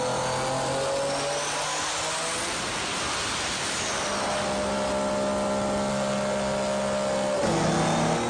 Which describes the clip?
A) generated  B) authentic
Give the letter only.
B